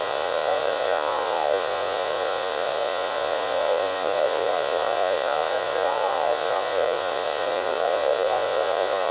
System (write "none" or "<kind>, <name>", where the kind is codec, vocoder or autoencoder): vocoder, Vocos